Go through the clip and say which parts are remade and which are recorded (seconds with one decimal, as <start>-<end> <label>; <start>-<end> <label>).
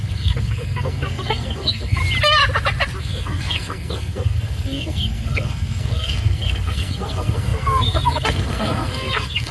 0.0-2.0 remade; 2.0-3.0 recorded; 3.0-9.5 remade